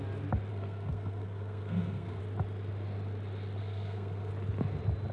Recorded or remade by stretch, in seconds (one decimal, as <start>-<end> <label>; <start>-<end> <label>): 0.0-0.5 recorded; 0.5-2.2 remade; 2.2-3.6 recorded; 3.6-4.3 remade; 4.3-5.1 recorded